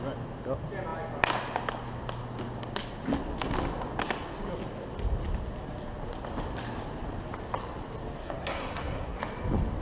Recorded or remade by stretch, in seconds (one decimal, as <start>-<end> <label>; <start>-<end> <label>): 0.0-8.2 recorded; 8.2-9.2 remade; 9.2-9.8 recorded